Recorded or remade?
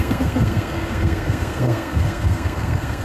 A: remade